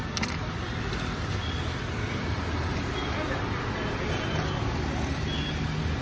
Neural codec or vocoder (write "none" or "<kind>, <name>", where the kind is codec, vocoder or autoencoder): none